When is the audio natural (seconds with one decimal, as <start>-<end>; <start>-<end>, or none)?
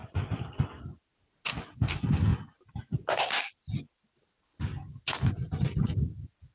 0.0-6.5